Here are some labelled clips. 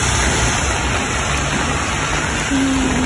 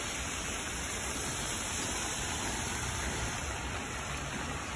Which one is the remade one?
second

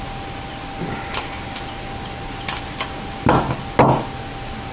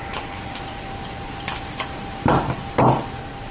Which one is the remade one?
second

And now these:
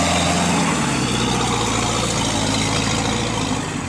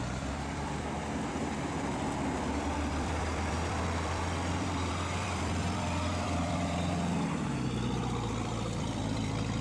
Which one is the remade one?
second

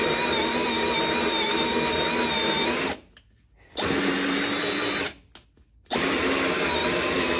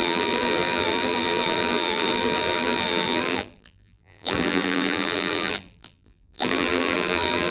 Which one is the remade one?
second